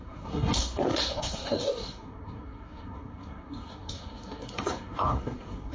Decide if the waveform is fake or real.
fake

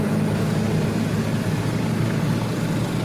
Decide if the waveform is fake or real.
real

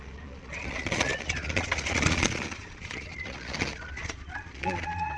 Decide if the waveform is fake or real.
fake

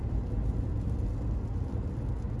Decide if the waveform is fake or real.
real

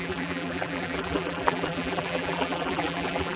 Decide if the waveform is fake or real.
fake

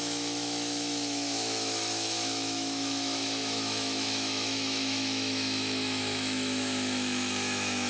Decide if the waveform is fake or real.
fake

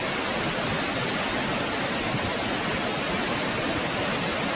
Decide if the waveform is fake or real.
real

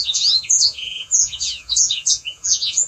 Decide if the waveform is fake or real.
fake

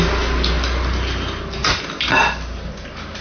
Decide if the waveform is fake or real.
real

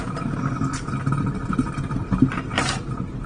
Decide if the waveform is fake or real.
real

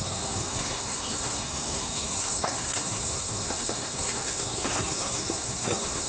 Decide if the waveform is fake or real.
fake